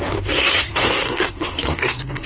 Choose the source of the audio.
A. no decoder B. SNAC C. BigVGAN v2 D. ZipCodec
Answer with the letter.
B